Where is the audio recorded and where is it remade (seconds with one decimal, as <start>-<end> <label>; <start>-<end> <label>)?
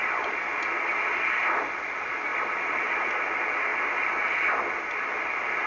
0.0-5.7 recorded